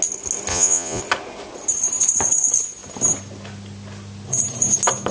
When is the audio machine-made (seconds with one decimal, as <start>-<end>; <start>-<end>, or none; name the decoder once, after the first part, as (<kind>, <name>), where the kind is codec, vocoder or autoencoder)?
0.5-1.0 (vocoder, Vocos)

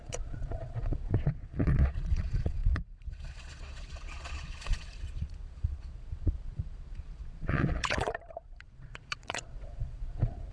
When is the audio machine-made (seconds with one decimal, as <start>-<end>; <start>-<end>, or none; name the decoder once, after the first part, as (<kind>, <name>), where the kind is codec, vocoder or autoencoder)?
0.0-10.5 (vocoder, Vocos)

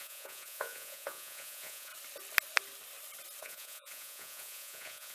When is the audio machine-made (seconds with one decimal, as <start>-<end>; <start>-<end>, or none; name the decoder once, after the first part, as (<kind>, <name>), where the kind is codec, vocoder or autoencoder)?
0.0-1.9 (vocoder, Vocos); 3.4-5.1

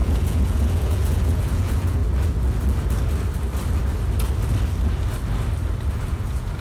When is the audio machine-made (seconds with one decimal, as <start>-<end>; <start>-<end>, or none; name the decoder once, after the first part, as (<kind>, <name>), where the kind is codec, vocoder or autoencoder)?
0.0-2.0 (vocoder, Vocos); 5.9-6.6